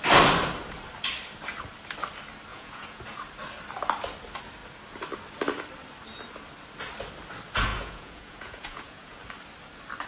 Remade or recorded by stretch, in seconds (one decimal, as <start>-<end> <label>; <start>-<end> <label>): 0.0-2.5 recorded; 2.5-3.0 remade; 3.0-7.7 recorded; 7.7-9.2 remade; 9.2-10.1 recorded